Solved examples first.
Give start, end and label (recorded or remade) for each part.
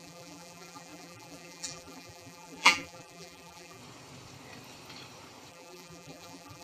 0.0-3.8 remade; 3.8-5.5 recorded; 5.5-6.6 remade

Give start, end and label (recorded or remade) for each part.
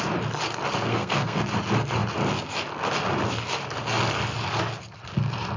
0.0-0.9 recorded; 0.9-1.4 remade; 1.4-5.6 recorded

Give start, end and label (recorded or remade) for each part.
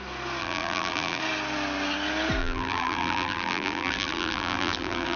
0.0-0.4 recorded; 0.4-1.2 remade; 1.2-2.4 recorded; 2.4-5.2 remade